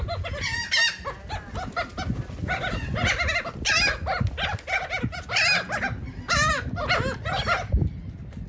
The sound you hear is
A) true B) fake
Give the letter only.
A